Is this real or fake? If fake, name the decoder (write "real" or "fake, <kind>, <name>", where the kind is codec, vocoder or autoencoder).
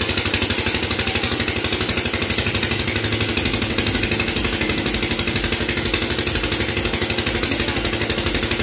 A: real